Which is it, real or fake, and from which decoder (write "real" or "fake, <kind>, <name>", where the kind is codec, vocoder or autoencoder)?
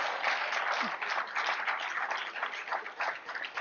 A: real